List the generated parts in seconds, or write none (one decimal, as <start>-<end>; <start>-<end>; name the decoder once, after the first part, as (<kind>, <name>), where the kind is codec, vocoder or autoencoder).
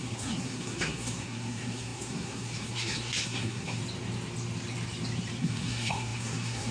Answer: 0.0-3.8 (codec, SNAC); 5.4-6.7